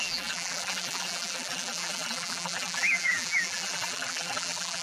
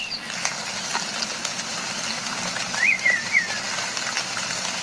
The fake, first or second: first